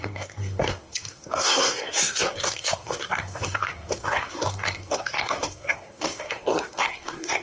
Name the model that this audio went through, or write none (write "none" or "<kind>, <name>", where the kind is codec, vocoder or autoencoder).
codec, SNAC